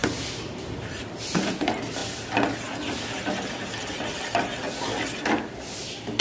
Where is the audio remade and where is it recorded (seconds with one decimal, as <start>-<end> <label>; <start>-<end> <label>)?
0.0-1.6 remade; 1.6-6.2 recorded